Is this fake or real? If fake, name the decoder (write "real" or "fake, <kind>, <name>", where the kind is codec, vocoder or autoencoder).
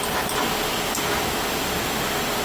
real